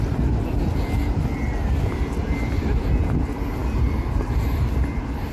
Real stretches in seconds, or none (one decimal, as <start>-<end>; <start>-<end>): 0.0-5.3